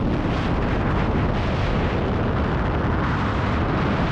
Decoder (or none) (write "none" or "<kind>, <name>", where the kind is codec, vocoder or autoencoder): none